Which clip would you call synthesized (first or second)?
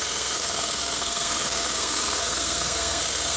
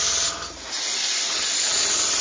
first